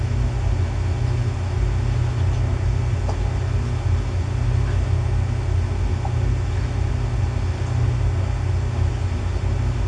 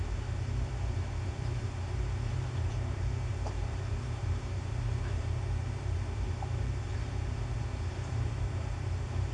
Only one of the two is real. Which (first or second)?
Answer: first